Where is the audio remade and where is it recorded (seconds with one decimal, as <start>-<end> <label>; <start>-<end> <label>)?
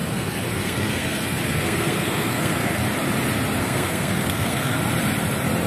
0.0-2.8 remade; 2.8-3.6 recorded; 3.6-4.8 remade; 4.8-5.7 recorded